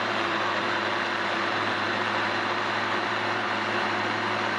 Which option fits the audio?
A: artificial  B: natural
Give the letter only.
A